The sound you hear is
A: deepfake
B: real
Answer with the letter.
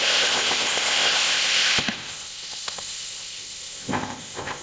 A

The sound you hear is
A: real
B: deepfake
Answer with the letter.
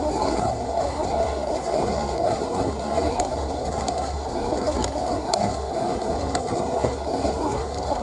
B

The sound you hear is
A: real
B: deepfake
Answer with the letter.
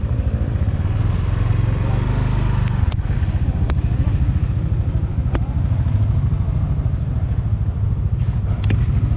A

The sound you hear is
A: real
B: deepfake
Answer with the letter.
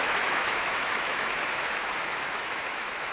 B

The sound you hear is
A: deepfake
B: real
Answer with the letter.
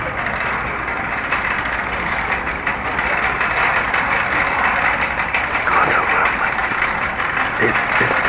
A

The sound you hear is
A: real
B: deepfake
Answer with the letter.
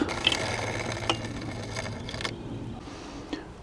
A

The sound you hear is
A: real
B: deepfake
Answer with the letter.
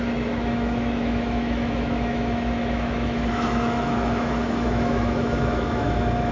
B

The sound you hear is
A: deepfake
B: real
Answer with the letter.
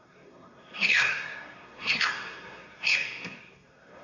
A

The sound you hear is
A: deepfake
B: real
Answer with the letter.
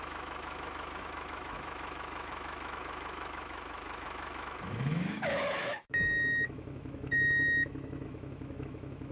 A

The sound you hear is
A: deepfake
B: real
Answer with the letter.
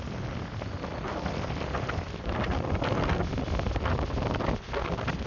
B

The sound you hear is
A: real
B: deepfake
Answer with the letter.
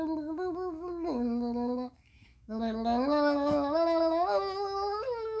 B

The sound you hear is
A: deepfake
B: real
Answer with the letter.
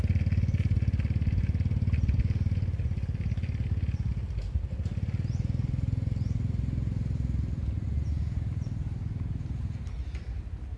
B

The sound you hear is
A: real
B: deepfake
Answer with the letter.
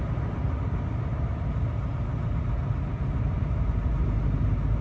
A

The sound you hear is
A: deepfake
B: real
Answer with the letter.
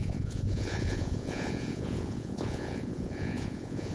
A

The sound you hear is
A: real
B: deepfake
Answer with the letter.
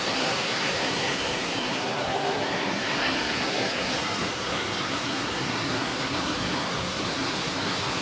B